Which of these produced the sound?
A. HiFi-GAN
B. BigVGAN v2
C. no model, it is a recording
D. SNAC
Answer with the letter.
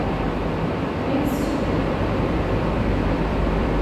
B